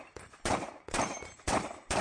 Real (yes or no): no